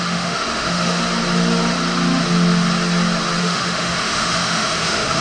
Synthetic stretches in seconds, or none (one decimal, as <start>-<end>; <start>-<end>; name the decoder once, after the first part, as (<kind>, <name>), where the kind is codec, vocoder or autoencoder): 0.0-1.0 (autoencoder, DAC-VAE); 3.4-5.2